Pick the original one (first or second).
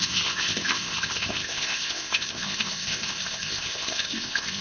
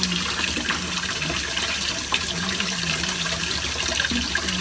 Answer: second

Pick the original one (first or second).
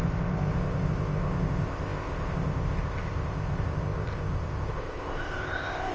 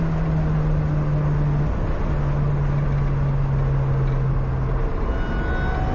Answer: second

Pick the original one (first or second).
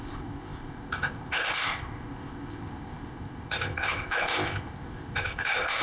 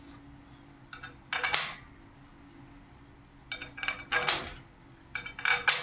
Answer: second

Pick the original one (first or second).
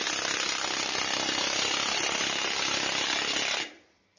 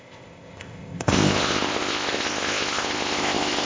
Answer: first